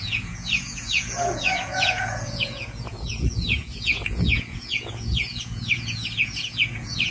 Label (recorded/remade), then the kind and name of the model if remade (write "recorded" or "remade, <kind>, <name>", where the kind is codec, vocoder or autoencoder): remade, vocoder, Vocos